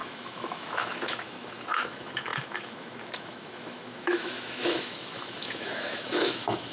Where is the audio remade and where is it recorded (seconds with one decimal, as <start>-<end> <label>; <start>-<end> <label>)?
0.0-6.7 remade